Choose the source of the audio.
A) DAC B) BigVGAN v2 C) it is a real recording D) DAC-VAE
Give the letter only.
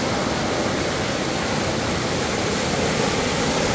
C